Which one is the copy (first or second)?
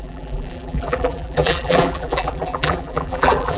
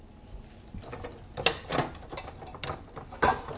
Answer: first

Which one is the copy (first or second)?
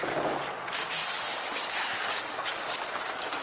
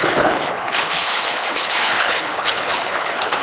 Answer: second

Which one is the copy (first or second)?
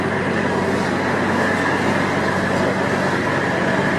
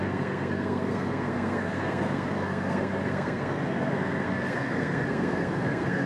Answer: second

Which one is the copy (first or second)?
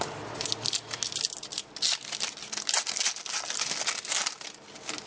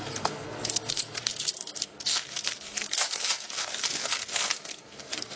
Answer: second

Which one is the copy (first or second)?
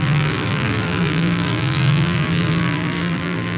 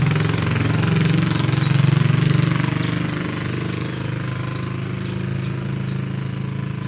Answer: first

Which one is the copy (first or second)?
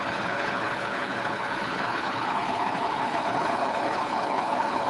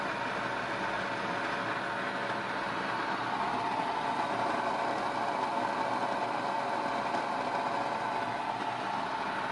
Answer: first